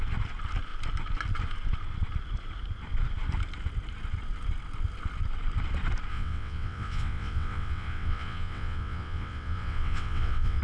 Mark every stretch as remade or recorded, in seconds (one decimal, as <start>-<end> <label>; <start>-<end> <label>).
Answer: 0.0-6.1 recorded; 6.1-10.6 remade